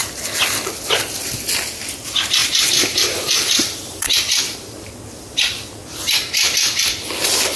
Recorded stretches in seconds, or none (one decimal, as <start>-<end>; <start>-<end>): 0.0-2.4; 4.4-7.6